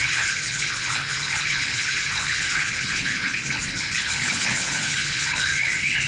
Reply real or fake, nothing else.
fake